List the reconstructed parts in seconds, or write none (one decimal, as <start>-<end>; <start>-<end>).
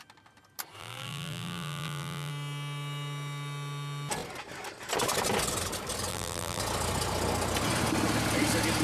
0.8-2.3; 6.1-6.6